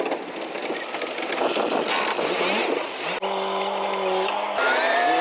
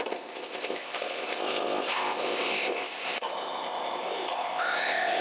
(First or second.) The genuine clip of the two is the first